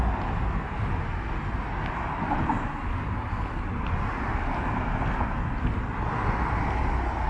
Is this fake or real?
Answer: real